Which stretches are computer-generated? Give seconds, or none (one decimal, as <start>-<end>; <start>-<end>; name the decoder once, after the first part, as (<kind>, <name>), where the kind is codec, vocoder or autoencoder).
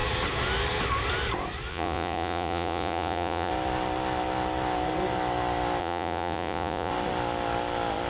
1.7-3.5 (vocoder, Vocos); 5.8-6.9